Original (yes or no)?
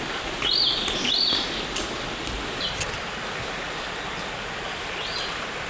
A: yes